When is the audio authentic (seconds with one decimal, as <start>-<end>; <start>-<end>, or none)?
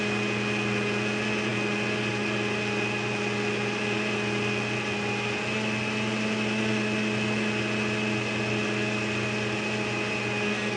0.0-10.8